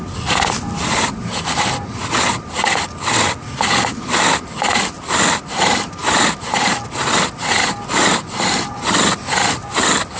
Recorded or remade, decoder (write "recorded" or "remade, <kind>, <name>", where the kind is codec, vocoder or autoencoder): recorded